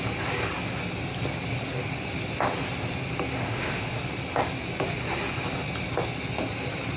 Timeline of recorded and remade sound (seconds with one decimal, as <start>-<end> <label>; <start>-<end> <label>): 0.0-3.4 recorded; 3.4-4.0 remade; 4.0-7.0 recorded